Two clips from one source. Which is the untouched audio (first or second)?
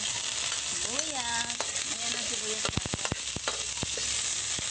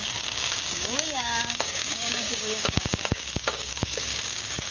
first